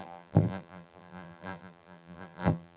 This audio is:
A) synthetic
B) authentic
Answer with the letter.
A